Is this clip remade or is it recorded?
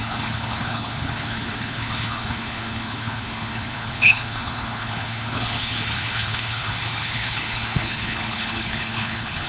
remade